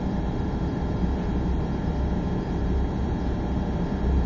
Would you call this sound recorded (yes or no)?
no